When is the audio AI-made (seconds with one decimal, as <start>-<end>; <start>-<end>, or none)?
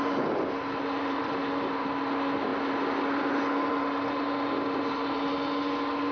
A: none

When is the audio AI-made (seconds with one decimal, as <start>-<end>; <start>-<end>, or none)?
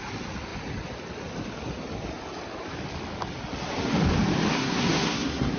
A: 4.5-5.6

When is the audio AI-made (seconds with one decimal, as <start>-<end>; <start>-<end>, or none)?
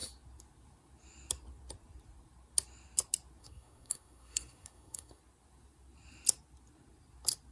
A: 3.4-5.2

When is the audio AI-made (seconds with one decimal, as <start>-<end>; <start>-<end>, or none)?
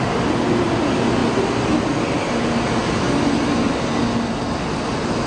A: none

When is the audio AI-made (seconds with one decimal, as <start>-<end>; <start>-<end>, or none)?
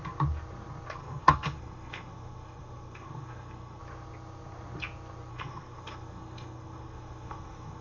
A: 1.0-3.8; 5.3-7.8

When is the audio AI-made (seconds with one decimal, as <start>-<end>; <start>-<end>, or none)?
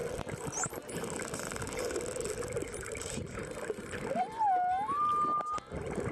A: none